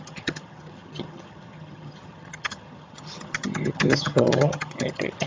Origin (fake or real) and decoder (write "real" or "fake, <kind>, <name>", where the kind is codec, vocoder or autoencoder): fake, vocoder, HiFi-GAN